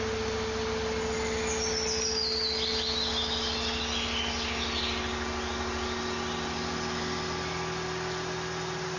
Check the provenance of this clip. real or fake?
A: real